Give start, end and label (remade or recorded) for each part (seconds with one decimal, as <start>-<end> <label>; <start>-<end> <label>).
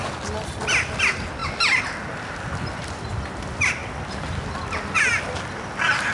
0.0-6.1 recorded